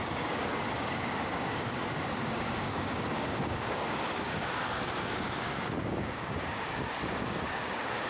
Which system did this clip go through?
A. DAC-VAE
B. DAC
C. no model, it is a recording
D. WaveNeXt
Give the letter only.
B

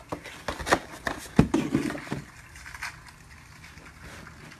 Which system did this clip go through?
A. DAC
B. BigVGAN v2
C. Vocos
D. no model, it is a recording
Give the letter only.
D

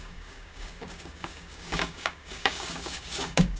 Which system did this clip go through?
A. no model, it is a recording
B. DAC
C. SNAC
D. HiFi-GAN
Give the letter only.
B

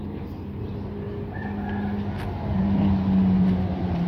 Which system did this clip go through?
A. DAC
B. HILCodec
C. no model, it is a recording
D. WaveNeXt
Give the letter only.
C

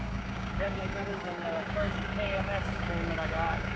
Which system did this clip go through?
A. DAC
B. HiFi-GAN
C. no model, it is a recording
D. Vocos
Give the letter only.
A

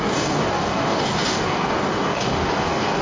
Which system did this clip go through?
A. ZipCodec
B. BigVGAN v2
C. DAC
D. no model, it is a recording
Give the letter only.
C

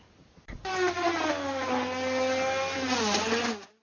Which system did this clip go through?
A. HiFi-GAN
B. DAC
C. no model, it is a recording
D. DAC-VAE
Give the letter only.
C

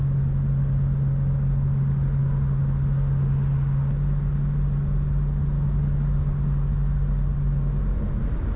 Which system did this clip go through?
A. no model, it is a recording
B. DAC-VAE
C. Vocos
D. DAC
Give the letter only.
A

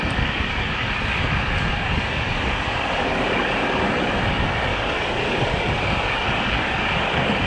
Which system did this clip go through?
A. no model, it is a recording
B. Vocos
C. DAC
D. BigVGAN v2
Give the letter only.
C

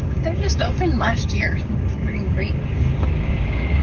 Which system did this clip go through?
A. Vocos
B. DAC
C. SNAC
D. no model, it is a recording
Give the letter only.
B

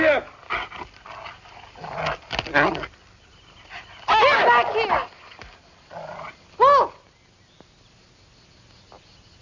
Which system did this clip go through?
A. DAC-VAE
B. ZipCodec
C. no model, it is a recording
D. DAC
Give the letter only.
C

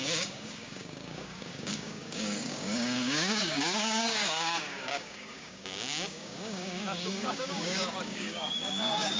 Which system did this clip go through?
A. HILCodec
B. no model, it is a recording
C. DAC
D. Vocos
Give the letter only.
C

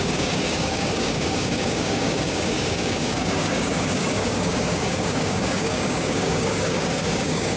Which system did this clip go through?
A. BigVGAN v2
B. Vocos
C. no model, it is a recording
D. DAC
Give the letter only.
D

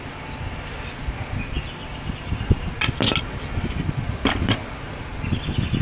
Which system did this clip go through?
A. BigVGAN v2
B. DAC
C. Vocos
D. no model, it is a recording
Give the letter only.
D